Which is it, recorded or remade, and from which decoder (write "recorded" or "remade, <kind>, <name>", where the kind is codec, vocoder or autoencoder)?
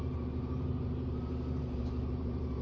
remade, vocoder, BigVGAN v2